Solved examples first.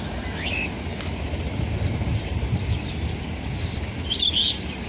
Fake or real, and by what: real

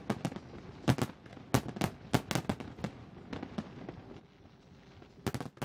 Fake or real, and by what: real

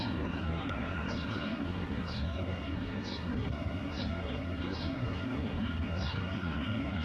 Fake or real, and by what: fake, codec, SNAC